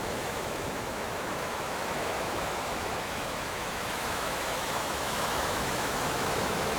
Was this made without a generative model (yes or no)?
no